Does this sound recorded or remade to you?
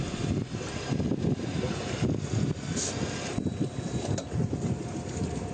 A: recorded